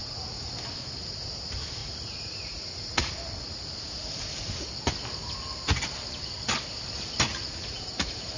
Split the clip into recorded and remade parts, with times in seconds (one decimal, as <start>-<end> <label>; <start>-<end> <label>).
0.0-0.5 remade; 0.5-1.8 recorded; 1.8-3.1 remade; 3.1-7.5 recorded; 7.5-8.4 remade